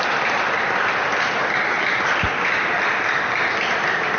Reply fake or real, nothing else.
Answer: real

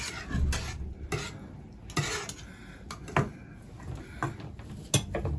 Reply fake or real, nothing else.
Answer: real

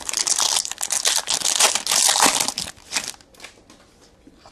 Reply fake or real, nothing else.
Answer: real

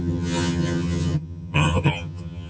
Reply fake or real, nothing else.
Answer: fake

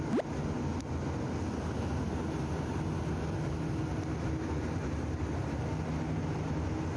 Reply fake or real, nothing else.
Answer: real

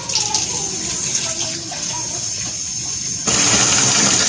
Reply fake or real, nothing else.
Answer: real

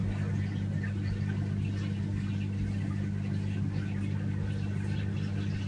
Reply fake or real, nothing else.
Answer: real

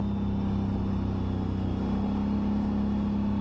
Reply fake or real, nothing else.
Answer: real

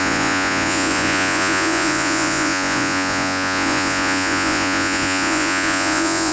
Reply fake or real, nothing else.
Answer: fake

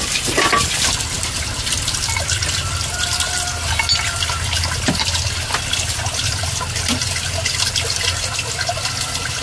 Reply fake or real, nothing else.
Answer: real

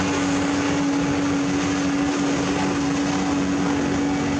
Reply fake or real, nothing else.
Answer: real